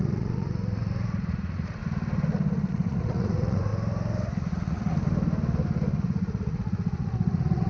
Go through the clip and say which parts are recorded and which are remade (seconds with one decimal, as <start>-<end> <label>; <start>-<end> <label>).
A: 0.0-1.8 remade; 1.8-2.7 recorded; 2.7-3.7 remade; 3.7-4.5 recorded; 4.5-4.9 remade; 4.9-6.0 recorded; 6.0-7.7 remade